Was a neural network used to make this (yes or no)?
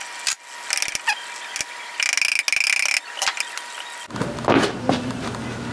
no